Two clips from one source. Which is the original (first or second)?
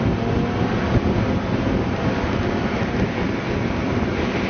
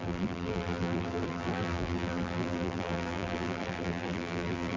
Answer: first